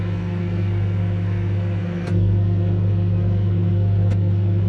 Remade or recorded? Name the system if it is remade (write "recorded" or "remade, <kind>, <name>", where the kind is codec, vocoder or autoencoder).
remade, codec, SNAC